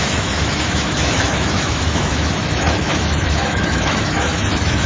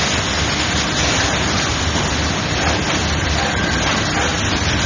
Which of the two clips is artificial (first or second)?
first